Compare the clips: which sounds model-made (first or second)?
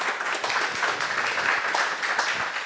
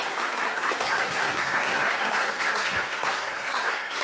second